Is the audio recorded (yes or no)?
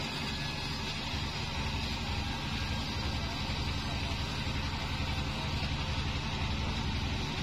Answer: yes